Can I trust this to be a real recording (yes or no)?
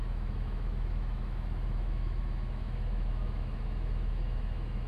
no